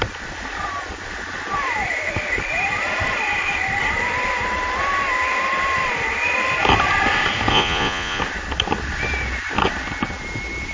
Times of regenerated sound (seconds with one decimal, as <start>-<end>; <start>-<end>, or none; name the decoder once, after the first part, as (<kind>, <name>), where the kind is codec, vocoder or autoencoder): 7.5-8.2 (vocoder, Vocos)